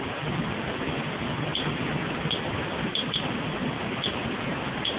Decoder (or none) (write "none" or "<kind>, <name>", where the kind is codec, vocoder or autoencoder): none